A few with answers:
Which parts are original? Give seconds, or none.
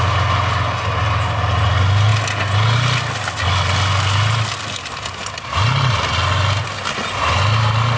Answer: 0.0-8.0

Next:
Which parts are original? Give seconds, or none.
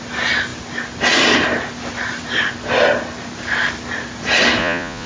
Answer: 0.0-4.6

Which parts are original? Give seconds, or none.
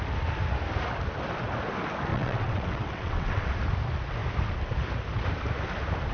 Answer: 0.0-2.1; 3.5-6.1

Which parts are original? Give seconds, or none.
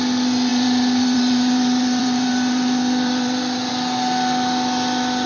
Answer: 0.0-0.5; 3.7-5.3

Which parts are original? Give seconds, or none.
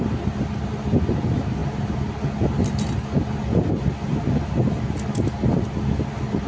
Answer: 0.0-6.5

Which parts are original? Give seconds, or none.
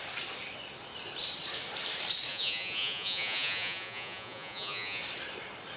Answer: 0.0-2.3; 5.0-5.8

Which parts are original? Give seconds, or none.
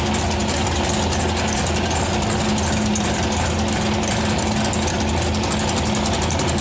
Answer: 0.0-6.6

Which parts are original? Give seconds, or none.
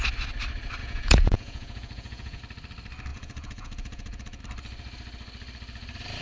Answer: 0.0-0.8; 2.4-3.1; 4.4-6.2